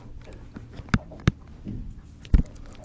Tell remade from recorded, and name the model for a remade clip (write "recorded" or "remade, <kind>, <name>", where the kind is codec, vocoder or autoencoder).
recorded